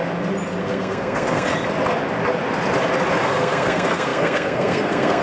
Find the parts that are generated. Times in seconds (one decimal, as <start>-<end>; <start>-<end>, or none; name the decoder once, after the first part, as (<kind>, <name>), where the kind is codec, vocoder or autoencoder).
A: 0.6-1.5 (codec, SNAC); 3.2-5.2